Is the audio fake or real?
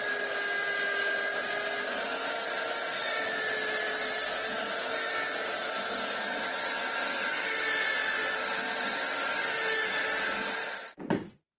real